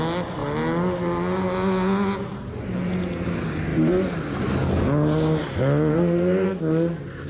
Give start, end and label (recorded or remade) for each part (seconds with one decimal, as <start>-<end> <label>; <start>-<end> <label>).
0.0-5.9 recorded; 5.9-6.6 remade; 6.6-7.3 recorded